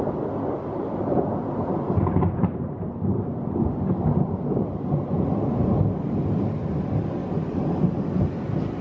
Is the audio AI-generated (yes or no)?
no